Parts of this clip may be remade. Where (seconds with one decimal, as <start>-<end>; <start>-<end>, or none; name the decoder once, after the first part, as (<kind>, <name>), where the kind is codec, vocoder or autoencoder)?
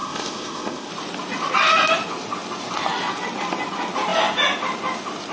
0.0-0.9 (codec, ZipCodec)